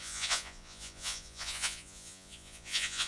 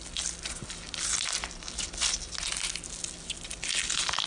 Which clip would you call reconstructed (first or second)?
first